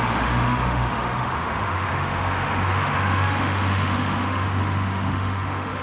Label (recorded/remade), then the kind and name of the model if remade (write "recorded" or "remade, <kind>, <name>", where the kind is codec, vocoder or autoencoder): remade, autoencoder, DAC-VAE